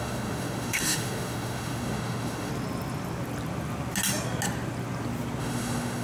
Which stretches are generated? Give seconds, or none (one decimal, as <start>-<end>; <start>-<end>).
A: 0.0-2.5; 5.4-6.0